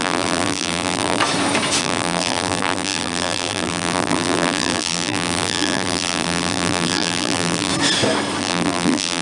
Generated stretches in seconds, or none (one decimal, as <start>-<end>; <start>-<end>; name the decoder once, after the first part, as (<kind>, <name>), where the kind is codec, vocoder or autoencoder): 0.0-1.2 (vocoder, BigVGAN v2); 1.8-7.7; 8.4-9.2